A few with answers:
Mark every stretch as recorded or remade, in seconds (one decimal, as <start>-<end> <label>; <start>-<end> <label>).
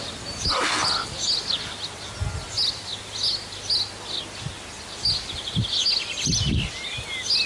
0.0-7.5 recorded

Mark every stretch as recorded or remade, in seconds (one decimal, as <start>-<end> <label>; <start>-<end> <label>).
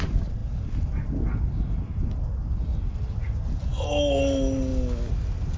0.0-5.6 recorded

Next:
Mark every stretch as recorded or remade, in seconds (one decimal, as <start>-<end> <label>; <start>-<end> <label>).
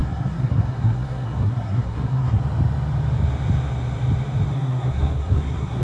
0.0-2.4 remade; 2.4-4.5 recorded; 4.5-5.8 remade